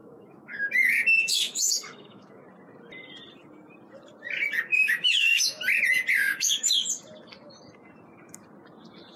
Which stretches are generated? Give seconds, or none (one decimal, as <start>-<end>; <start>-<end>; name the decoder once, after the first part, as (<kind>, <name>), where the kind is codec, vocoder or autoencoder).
0.0-2.4 (autoencoder, DAC-VAE); 4.7-5.6; 6.3-6.9